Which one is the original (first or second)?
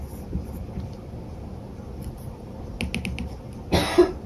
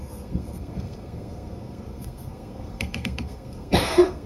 first